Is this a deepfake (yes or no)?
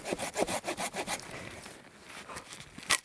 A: no